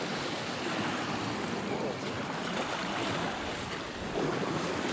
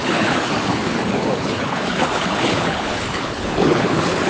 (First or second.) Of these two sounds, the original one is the first